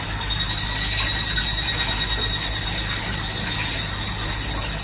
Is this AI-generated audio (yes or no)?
no